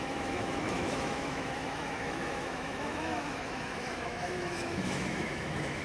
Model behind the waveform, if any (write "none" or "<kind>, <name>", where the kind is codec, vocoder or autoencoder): autoencoder, DAC-VAE